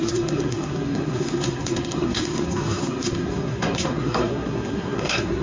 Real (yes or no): no